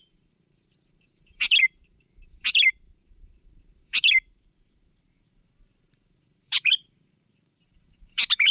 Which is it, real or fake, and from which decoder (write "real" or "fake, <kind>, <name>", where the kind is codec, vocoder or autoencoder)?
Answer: fake, vocoder, BigVGAN v2